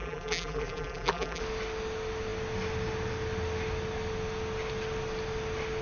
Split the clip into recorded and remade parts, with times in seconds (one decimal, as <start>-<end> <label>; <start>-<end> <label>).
0.0-1.4 remade; 1.4-5.8 recorded